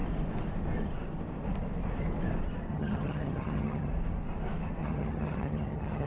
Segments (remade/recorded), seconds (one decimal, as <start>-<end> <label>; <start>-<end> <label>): 0.0-2.7 recorded; 2.7-3.9 remade; 3.9-4.8 recorded; 4.8-6.1 remade